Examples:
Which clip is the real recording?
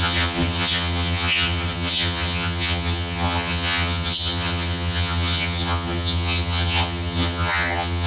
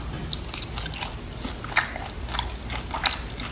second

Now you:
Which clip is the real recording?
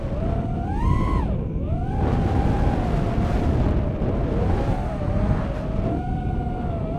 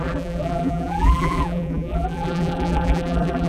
first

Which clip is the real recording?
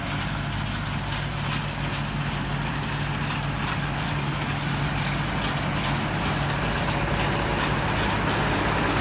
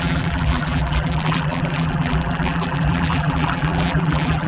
first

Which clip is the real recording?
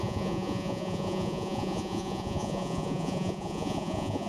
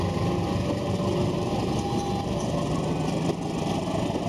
second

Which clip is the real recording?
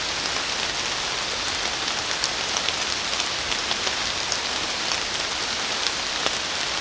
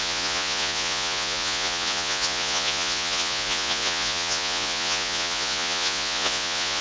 first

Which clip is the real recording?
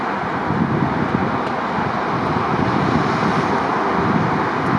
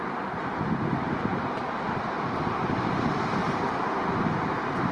first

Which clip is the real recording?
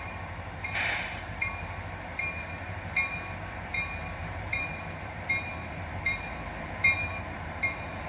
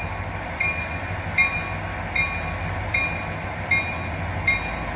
second